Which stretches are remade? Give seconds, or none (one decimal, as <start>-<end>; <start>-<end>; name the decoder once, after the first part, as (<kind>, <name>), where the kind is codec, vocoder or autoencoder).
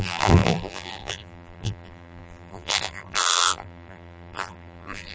0.0-5.1 (vocoder, BigVGAN v2)